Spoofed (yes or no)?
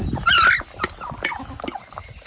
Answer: no